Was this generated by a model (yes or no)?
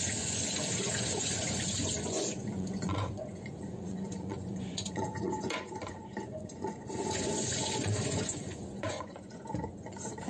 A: yes